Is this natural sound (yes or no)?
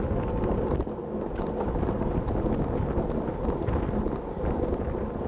yes